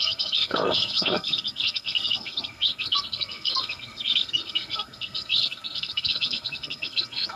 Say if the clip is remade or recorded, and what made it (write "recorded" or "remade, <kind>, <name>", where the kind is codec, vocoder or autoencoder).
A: remade, codec, SNAC